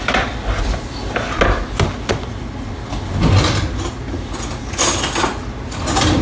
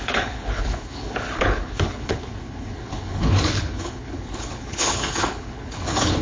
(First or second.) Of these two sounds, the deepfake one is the second